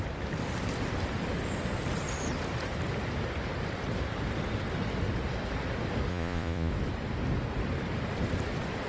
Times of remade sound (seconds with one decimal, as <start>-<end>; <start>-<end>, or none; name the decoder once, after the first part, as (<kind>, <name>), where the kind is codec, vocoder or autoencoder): 6.1-6.7 (vocoder, Vocos)